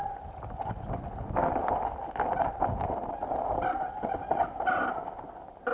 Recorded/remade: recorded